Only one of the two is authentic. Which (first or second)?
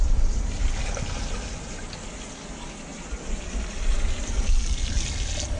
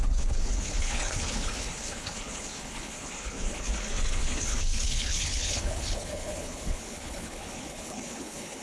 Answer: first